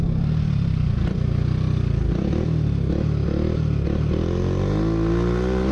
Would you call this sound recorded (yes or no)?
yes